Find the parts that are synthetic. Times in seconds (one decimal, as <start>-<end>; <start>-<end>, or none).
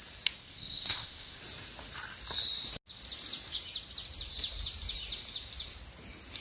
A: 0.4-1.4